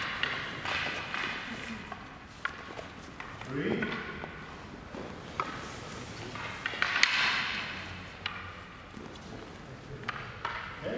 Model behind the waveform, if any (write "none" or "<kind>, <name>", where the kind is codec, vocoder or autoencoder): none